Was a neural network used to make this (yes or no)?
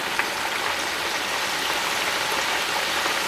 no